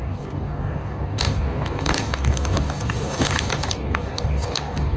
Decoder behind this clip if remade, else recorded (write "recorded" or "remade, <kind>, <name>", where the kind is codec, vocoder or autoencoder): remade, codec, DAC